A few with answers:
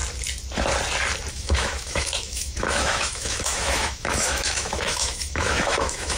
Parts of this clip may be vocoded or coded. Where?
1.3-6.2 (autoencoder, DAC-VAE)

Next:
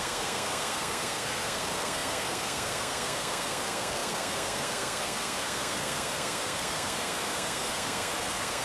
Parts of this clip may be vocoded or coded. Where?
0.0-8.6 (codec, SNAC)

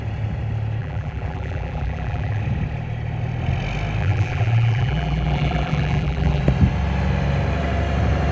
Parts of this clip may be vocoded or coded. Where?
0.8-2.4 (vocoder, BigVGAN v2); 4.0-6.4

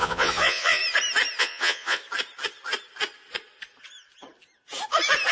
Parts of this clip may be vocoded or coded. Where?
0.0-0.8 (vocoder, Vocos); 1.4-2.0

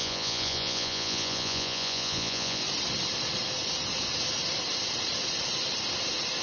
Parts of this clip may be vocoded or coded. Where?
0.0-2.6 (vocoder, Vocos)

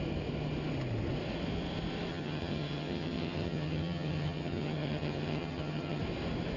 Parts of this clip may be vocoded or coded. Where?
2.1-6.0 (vocoder, HiFi-GAN)